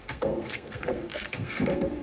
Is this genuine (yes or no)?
no